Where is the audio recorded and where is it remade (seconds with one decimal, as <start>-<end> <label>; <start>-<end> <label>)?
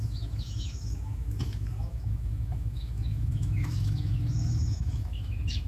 0.0-5.7 remade